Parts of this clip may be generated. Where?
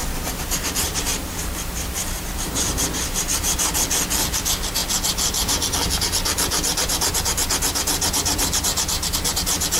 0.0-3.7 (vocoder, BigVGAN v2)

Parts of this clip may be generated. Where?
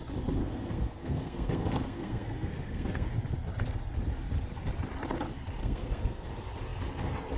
0.4-3.1 (codec, SNAC); 5.6-6.3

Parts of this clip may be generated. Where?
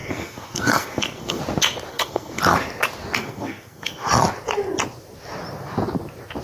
0.0-1.4 (codec, SNAC); 1.9-2.4; 3.2-4.1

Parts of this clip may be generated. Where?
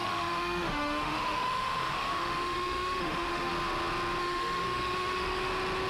0.0-3.5 (autoencoder, DAC-VAE); 4.2-5.5